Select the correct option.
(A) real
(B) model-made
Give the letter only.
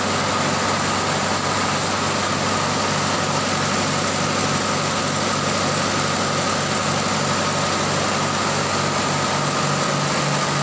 A